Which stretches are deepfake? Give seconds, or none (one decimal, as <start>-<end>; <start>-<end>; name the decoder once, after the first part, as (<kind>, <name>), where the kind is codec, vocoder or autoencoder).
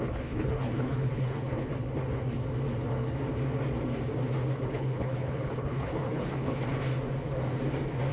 0.0-1.7 (codec, HILCodec); 4.7-6.7